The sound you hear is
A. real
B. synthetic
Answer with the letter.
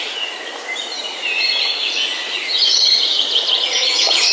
B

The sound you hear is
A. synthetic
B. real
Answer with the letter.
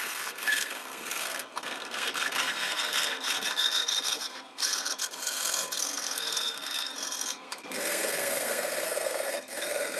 A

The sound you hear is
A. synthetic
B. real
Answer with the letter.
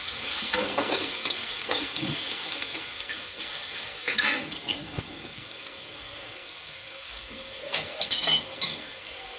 A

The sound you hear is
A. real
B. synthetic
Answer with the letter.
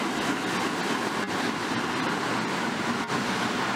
A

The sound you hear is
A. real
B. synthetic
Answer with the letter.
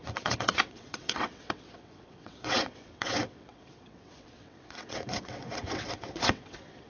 B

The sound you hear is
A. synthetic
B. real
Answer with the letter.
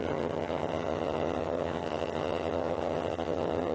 A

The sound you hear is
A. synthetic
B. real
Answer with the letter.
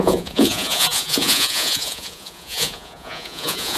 A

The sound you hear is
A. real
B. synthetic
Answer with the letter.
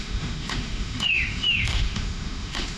B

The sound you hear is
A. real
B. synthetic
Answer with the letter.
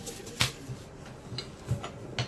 A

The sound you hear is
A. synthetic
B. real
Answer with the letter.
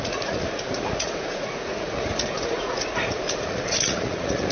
A